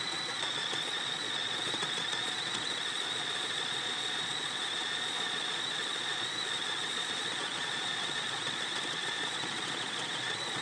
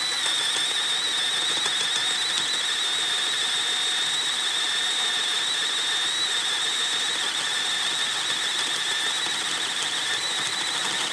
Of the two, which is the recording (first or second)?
second